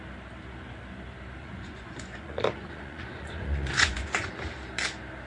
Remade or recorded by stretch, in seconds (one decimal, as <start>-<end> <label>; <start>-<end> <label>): 0.0-1.4 recorded; 1.4-4.3 remade; 4.3-5.3 recorded